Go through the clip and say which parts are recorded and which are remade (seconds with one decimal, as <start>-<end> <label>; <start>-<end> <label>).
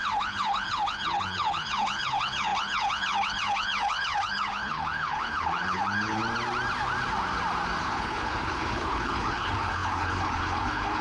0.0-6.2 remade; 6.2-7.8 recorded; 7.8-11.0 remade